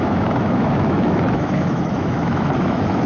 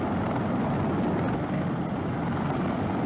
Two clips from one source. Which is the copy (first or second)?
first